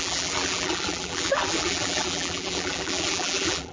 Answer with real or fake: fake